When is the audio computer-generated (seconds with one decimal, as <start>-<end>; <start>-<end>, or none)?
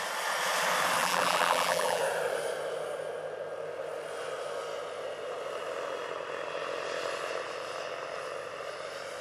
1.0-2.0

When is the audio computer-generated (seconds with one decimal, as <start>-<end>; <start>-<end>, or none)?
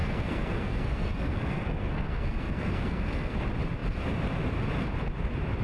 0.0-3.4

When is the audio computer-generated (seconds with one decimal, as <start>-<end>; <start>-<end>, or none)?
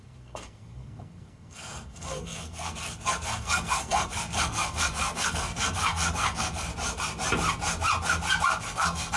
0.0-6.7; 8.6-9.2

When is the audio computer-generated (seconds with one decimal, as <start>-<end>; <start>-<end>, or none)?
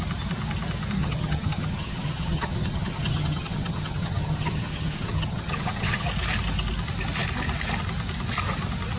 1.0-6.1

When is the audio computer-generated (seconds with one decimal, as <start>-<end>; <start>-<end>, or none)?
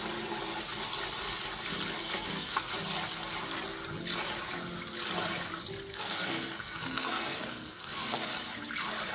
2.0-2.7; 5.9-8.3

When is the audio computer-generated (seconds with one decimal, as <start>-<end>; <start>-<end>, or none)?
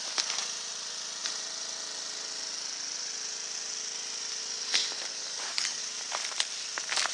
5.1-5.8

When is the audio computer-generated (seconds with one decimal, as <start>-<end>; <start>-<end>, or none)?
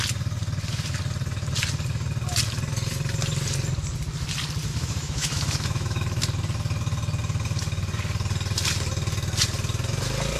4.7-6.2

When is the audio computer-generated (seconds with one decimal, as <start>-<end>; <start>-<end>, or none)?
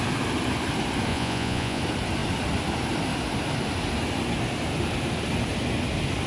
1.1-1.8